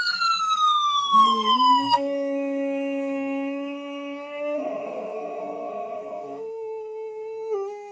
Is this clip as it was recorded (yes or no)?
no